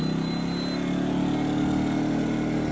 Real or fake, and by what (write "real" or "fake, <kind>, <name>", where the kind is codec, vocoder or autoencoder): real